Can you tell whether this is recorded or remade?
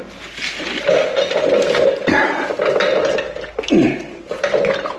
recorded